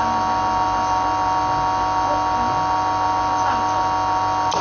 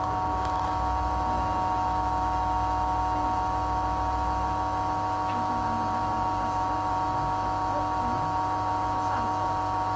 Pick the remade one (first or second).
second